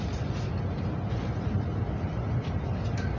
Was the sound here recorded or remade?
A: recorded